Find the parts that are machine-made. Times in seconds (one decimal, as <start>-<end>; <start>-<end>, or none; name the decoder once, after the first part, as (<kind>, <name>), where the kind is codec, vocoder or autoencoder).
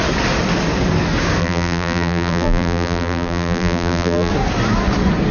1.4-4.3 (vocoder, BigVGAN v2)